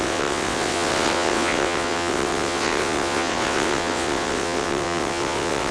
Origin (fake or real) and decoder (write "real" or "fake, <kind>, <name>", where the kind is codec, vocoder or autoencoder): fake, vocoder, WaveNeXt